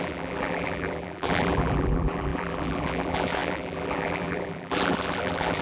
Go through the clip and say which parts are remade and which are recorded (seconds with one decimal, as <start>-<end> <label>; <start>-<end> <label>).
0.0-5.6 remade